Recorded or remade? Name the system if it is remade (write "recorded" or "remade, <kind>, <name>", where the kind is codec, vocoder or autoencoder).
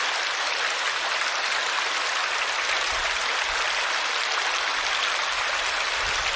recorded